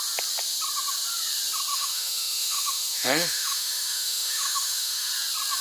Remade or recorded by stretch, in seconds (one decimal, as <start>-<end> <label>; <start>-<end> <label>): 0.0-1.7 recorded; 1.7-5.1 remade; 5.1-5.6 recorded